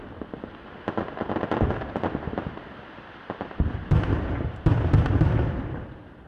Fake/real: fake